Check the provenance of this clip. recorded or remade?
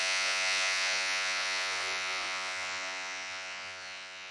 remade